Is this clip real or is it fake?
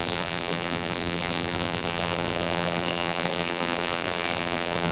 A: fake